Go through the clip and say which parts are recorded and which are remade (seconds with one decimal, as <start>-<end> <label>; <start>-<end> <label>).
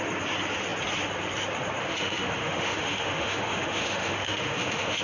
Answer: 0.0-1.8 recorded; 1.8-5.0 remade